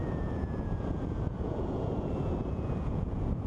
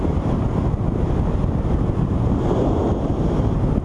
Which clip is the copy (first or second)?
first